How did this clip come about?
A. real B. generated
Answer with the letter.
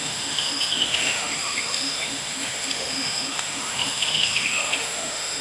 B